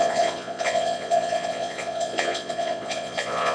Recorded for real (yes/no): no